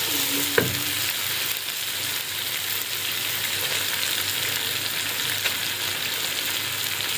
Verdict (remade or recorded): recorded